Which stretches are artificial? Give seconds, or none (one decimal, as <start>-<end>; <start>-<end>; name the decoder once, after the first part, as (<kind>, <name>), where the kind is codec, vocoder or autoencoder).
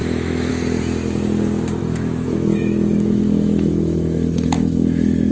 0.0-0.5 (autoencoder, DAC-VAE); 1.8-5.3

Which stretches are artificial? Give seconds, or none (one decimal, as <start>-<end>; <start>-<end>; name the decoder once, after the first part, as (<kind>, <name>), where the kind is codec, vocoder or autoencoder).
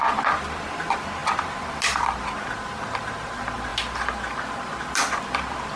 none